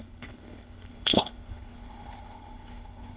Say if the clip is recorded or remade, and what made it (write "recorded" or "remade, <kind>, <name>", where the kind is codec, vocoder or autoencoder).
remade, codec, HILCodec